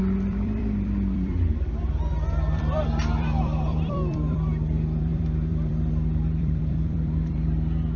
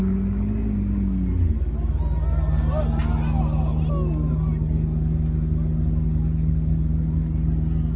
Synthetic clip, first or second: first